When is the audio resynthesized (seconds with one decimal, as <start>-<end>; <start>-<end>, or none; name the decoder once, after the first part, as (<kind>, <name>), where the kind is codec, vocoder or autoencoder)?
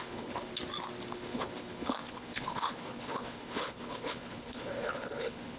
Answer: 0.0-0.5 (codec, HILCodec); 1.1-5.6